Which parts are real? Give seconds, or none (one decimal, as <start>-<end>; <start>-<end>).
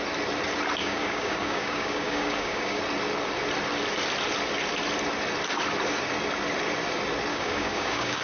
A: 0.0-0.8; 2.8-7.3